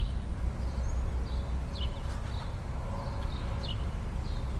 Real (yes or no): yes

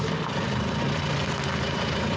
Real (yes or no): no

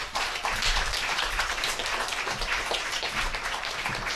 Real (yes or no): no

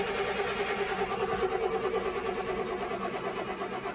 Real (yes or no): yes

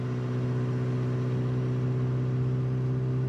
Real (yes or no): yes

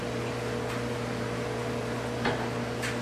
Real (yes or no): yes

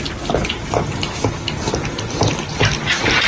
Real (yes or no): yes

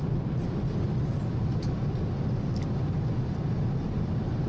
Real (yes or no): yes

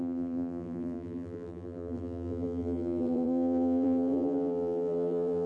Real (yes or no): no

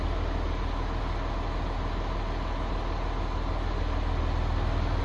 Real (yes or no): yes